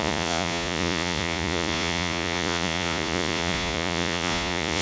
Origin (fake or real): fake